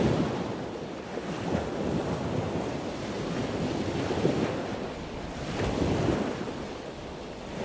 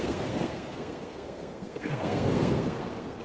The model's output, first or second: second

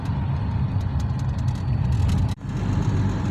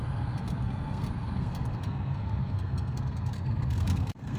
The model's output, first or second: second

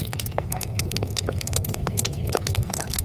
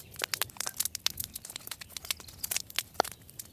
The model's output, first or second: first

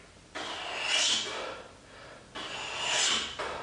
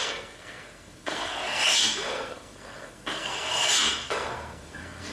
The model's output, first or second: second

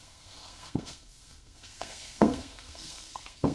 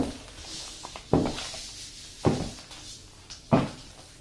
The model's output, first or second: first